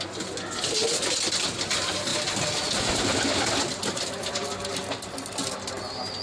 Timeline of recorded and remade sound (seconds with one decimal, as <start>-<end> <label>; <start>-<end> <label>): 0.0-6.2 recorded